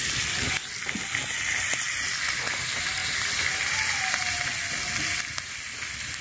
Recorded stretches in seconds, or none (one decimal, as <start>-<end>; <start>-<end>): 0.0-6.2